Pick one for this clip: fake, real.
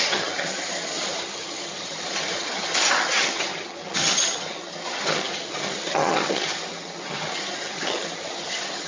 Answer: fake